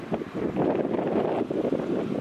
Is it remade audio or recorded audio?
recorded